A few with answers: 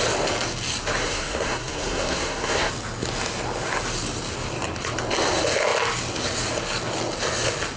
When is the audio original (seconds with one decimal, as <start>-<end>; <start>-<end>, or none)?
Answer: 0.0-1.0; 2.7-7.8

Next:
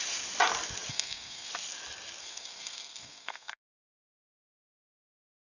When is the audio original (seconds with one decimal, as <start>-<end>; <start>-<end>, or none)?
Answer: 0.0-0.9; 1.5-2.2; 3.7-5.5

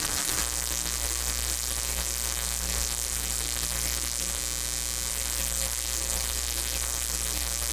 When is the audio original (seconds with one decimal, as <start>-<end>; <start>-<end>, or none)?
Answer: 4.4-5.1